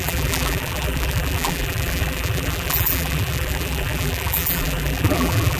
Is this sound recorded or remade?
remade